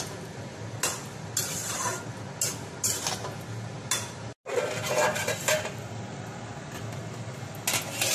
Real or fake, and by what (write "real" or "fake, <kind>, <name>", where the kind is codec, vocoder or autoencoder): real